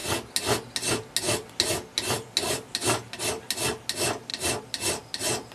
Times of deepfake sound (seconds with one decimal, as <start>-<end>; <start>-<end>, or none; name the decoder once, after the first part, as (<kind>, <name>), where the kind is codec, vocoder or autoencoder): none